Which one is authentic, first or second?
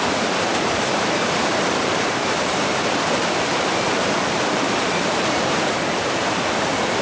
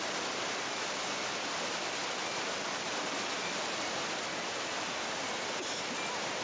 second